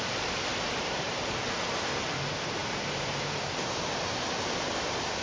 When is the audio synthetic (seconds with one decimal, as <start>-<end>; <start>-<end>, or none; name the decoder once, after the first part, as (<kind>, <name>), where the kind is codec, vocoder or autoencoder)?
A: 0.5-1.5 (vocoder, BigVGAN v2); 2.6-3.4